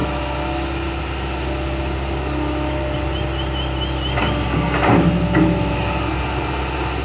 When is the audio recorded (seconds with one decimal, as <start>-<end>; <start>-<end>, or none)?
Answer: 0.0-7.0